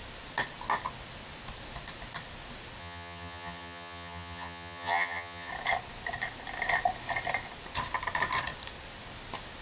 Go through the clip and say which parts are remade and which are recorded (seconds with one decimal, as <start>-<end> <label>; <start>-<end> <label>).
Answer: 0.0-2.8 recorded; 2.8-5.5 remade; 5.5-9.6 recorded